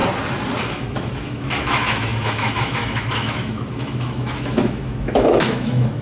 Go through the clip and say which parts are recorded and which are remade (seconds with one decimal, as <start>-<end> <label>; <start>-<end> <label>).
0.0-0.7 recorded; 0.7-6.0 remade